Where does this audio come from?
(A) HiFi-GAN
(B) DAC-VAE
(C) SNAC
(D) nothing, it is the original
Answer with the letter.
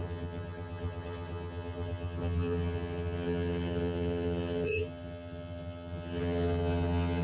A